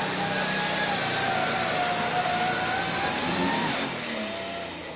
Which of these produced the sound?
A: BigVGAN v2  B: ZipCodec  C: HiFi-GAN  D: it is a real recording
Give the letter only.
D